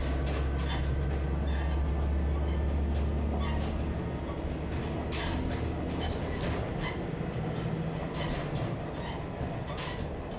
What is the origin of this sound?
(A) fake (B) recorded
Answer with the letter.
B